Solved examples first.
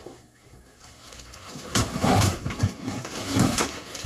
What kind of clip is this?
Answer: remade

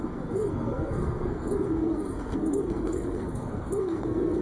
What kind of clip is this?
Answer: remade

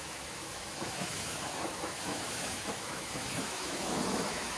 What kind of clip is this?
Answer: remade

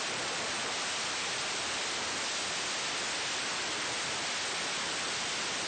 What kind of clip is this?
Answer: recorded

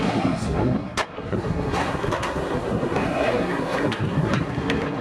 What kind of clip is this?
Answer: remade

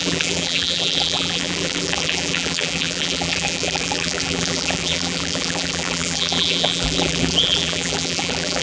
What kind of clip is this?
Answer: remade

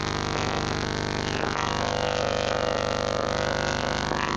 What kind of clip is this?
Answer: recorded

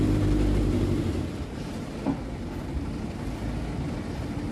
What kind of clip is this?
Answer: recorded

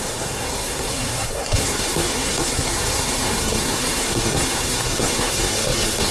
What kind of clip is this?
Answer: remade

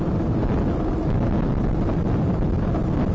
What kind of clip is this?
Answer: recorded